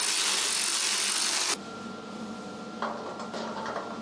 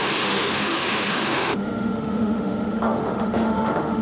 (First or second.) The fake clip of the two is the second